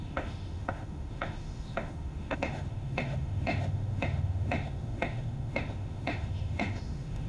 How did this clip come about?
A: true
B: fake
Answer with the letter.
B